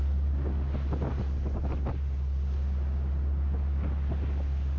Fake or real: real